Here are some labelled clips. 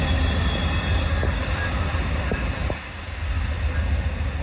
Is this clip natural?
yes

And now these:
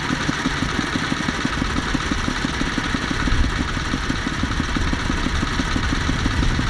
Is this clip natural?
yes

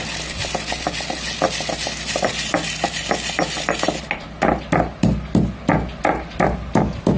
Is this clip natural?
yes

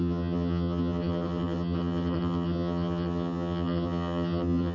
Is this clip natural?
no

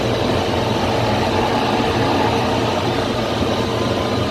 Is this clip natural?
yes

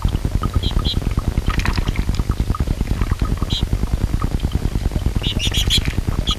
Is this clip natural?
yes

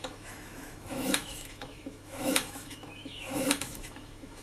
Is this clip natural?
no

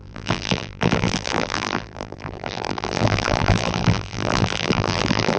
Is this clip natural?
no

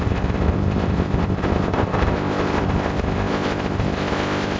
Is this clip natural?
no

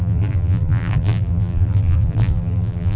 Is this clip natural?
no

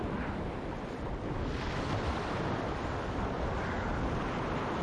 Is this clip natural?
yes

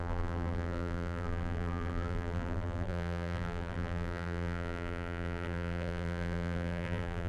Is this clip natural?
no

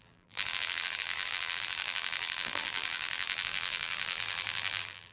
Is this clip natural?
no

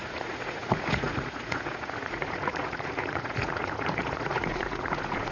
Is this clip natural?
no